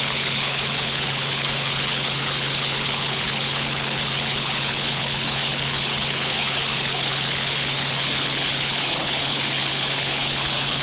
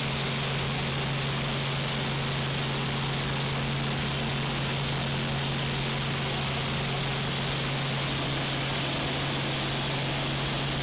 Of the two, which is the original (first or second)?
second